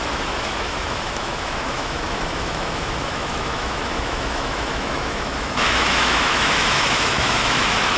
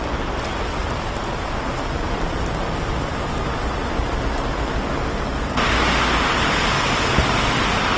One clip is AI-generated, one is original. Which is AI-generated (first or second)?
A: first